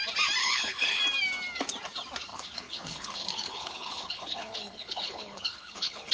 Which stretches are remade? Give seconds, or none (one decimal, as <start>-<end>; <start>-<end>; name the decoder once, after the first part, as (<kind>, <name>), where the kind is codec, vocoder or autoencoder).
0.4-1.0 (codec, HILCodec); 2.3-6.1